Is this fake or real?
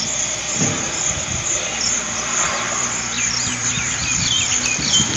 fake